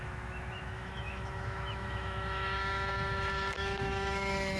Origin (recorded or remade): remade